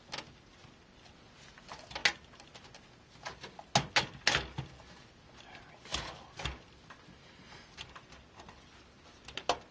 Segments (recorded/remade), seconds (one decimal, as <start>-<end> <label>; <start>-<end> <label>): 0.0-9.7 recorded